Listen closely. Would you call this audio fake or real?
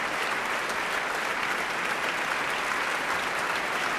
real